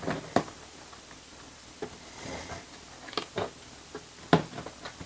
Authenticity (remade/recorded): recorded